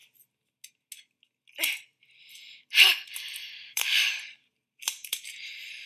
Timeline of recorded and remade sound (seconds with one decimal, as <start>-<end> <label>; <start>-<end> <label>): 0.0-3.5 recorded; 3.5-5.9 remade